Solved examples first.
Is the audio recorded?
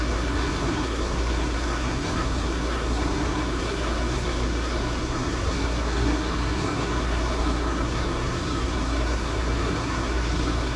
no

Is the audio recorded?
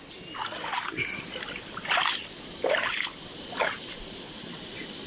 yes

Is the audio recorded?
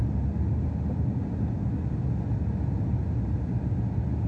yes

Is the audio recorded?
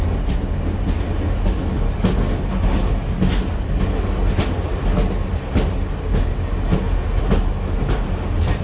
yes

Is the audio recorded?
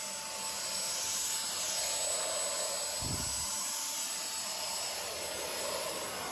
yes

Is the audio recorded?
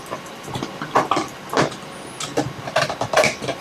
no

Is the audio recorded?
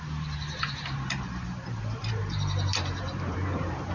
no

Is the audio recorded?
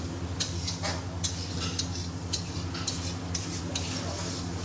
yes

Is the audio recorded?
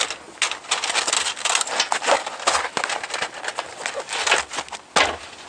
yes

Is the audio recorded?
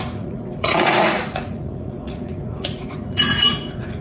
no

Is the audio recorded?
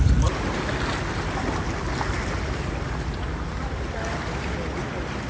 yes